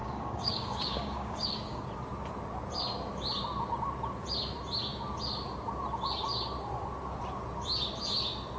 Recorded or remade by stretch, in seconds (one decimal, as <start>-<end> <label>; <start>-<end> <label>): 0.0-1.8 remade; 1.8-8.6 recorded